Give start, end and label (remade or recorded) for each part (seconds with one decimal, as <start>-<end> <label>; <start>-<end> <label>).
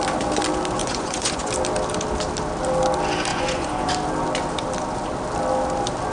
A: 0.0-0.8 recorded; 0.8-1.5 remade; 1.5-3.3 recorded; 3.3-3.9 remade; 3.9-6.1 recorded